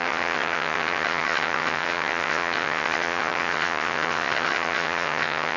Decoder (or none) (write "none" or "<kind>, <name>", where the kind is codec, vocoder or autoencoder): vocoder, HiFi-GAN